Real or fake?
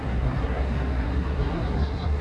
fake